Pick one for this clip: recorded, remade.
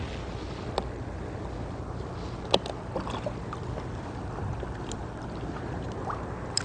recorded